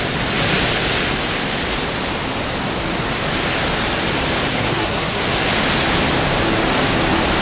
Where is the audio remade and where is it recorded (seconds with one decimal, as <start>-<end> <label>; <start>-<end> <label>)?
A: 0.0-4.5 recorded; 4.5-5.2 remade; 5.2-7.4 recorded